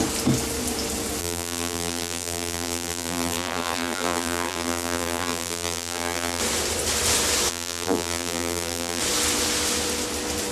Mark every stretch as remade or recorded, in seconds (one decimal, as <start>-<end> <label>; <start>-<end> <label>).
0.0-1.2 recorded; 1.2-6.4 remade; 6.4-7.5 recorded; 7.5-9.0 remade; 9.0-10.5 recorded